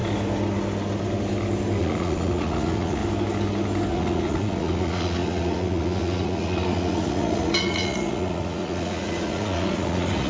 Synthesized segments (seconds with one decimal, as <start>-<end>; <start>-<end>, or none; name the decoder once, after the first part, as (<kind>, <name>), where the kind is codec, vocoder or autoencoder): 1.8-3.0 (vocoder, Vocos); 3.9-10.3